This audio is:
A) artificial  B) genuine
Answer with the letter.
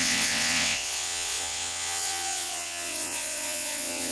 A